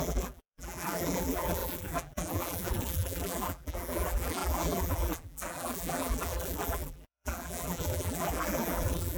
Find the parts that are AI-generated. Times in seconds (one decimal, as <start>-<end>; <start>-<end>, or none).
0.0-9.2